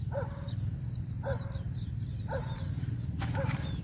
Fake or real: real